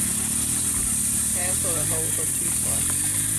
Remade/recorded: recorded